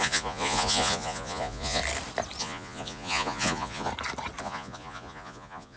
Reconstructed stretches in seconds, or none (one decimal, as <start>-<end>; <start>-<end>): 0.0-1.8; 2.4-3.9; 4.4-5.8